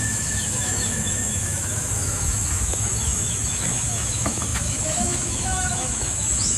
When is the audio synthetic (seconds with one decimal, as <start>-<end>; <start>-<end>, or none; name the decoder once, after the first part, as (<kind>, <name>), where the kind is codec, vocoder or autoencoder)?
0.0-6.6 (autoencoder, DAC-VAE)